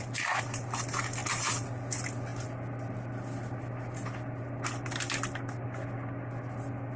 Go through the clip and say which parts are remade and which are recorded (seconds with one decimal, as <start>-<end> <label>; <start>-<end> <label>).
0.0-7.0 recorded